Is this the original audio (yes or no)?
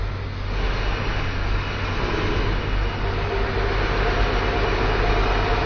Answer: yes